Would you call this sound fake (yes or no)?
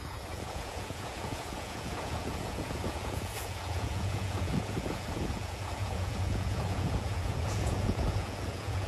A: yes